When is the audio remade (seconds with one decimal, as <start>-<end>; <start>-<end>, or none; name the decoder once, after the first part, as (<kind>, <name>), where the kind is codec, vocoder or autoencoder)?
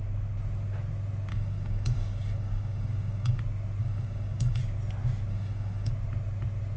1.3-3.4 (codec, DAC); 3.8-4.6; 5.3-5.9